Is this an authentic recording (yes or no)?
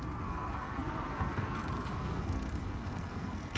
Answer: no